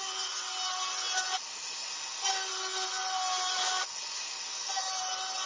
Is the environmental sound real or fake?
real